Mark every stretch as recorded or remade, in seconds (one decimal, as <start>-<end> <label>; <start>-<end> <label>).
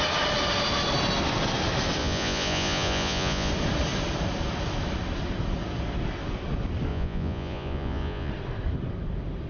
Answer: 0.0-2.0 recorded; 2.0-3.5 remade; 3.5-6.9 recorded; 6.9-8.3 remade; 8.3-9.5 recorded